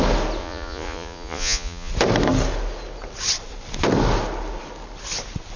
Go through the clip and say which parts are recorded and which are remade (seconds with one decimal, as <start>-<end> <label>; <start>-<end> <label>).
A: 0.0-0.4 recorded; 0.4-1.9 remade; 1.9-5.6 recorded